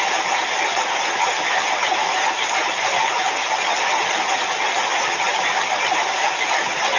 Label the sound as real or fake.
real